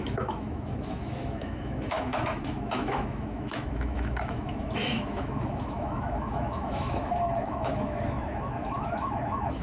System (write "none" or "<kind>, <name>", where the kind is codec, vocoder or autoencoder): autoencoder, DAC-VAE